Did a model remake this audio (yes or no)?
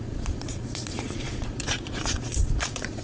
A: yes